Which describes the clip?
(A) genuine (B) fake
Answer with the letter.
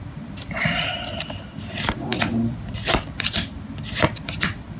B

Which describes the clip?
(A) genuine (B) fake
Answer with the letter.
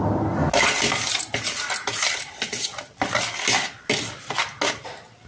A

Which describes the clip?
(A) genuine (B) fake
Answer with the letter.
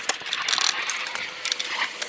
B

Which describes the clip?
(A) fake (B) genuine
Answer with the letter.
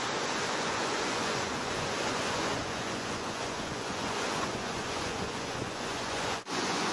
A